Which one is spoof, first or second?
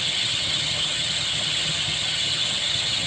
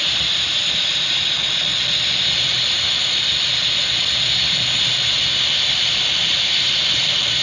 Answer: first